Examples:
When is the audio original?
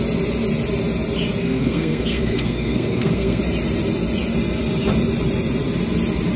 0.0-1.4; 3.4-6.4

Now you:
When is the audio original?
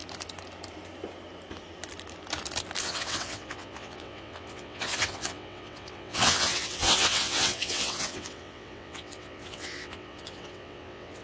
0.0-2.8